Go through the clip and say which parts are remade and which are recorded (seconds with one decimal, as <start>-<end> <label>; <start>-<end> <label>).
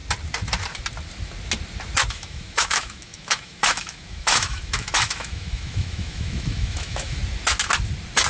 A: 0.0-2.1 recorded; 2.1-7.2 remade; 7.2-8.3 recorded